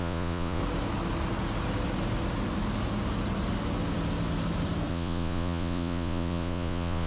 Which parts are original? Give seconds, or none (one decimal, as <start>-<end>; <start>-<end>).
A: 0.6-4.9